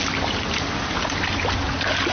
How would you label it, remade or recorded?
recorded